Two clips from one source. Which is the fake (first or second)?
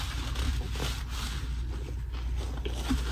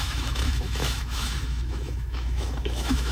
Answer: second